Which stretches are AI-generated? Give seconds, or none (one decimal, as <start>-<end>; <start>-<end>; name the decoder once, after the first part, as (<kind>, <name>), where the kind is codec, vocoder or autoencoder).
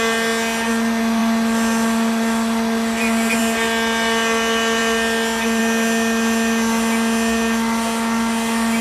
none